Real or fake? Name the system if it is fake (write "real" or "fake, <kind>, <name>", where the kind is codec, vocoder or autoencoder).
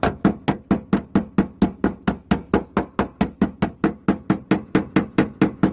real